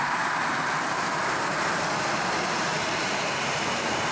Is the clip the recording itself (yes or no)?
no